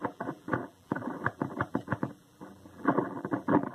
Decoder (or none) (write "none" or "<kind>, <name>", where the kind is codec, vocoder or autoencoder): vocoder, BigVGAN v2